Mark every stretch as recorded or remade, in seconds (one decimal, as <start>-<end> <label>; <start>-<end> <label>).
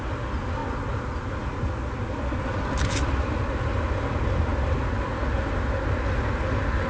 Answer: 0.0-6.9 recorded